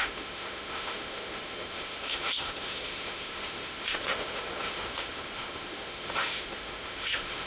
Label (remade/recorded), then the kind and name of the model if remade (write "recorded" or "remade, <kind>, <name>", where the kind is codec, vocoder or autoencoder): remade, autoencoder, DAC-VAE